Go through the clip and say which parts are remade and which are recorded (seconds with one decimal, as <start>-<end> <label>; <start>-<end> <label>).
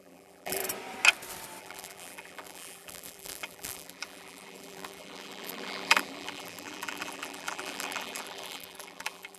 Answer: 0.0-0.6 remade; 0.6-1.6 recorded; 1.6-9.4 remade